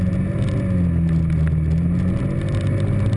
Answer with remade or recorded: recorded